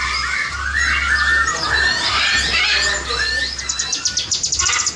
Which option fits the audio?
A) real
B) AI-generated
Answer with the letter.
A